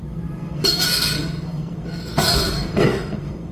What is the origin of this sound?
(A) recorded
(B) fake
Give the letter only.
B